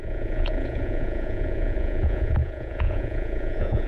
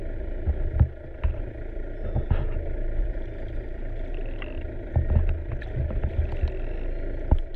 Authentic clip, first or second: second